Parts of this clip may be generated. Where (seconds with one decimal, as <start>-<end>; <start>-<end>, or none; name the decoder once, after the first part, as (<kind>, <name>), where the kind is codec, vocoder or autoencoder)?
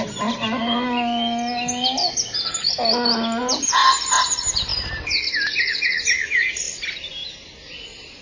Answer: 3.4-3.9 (vocoder, Vocos)